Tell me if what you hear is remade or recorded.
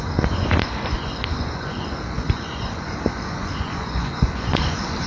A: remade